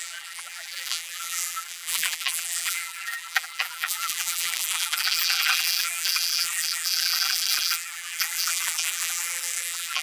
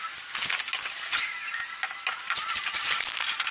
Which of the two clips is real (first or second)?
second